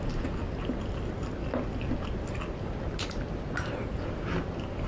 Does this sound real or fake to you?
real